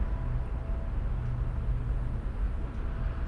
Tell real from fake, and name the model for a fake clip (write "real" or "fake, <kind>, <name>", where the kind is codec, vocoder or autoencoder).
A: real